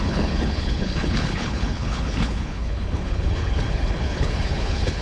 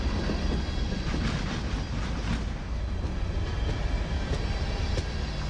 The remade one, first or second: first